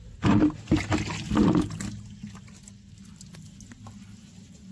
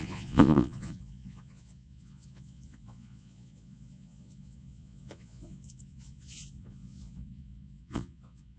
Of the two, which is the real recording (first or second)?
first